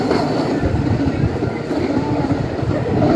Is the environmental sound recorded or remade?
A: recorded